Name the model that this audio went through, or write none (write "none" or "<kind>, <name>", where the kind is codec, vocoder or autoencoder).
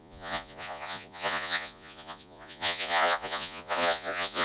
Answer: vocoder, Vocos